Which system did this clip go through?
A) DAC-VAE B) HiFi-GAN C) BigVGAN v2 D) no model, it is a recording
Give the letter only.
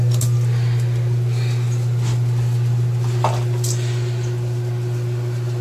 D